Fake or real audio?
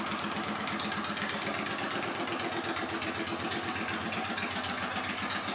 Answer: real